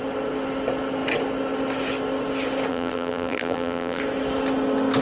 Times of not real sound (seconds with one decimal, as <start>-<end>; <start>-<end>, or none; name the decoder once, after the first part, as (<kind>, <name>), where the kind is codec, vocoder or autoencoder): 2.7-4.0 (vocoder, BigVGAN v2)